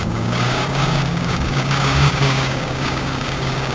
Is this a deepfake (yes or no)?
yes